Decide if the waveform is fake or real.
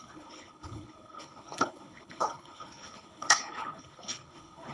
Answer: fake